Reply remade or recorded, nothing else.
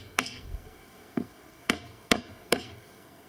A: remade